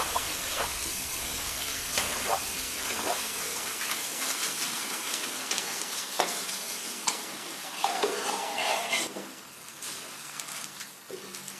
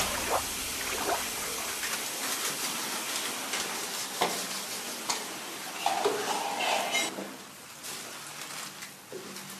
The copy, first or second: first